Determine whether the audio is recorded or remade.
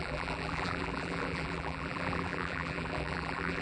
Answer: remade